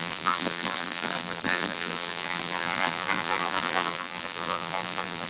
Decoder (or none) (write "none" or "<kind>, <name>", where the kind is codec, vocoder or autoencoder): vocoder, BigVGAN v2